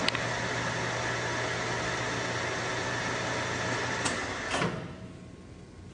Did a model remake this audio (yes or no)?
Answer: no